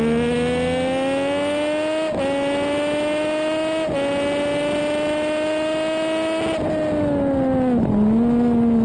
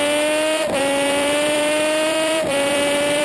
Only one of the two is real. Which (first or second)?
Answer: first